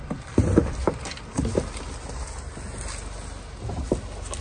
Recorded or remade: recorded